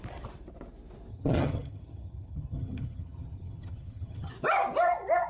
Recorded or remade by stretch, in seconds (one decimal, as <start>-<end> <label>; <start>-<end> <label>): 0.0-1.1 recorded; 1.1-4.3 remade; 4.3-5.3 recorded